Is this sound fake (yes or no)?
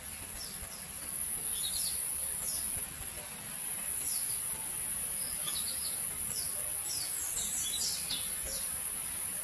yes